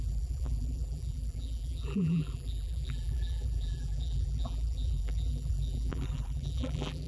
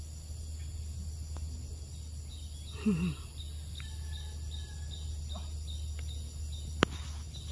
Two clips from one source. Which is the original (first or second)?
second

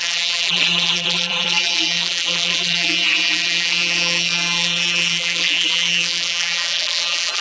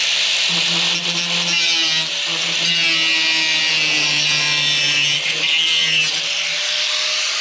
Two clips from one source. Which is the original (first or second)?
second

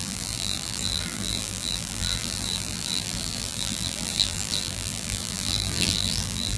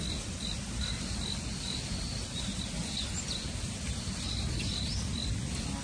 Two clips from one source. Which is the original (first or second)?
second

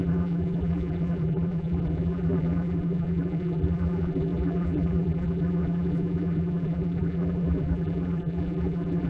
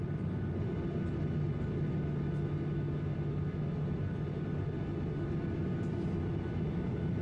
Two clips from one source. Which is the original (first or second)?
second